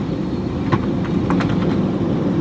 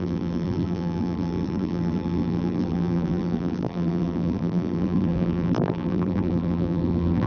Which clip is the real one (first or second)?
first